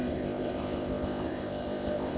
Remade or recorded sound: remade